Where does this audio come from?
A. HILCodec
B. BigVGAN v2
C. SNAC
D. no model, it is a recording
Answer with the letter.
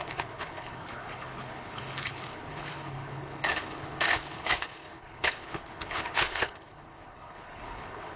A